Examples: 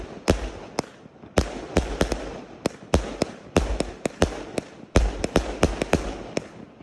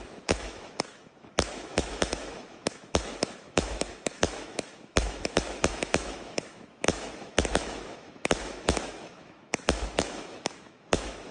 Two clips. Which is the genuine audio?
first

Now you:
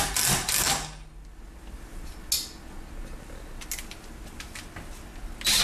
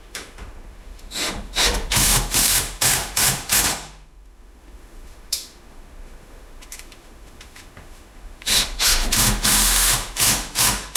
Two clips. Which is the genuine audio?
first